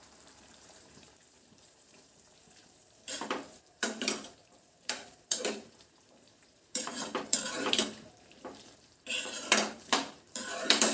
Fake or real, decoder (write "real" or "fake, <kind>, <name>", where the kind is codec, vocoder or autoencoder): fake, vocoder, BigVGAN v2